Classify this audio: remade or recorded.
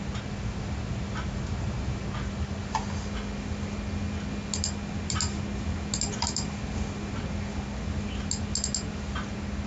recorded